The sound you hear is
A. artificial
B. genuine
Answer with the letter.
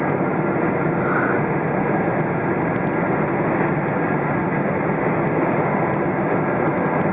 B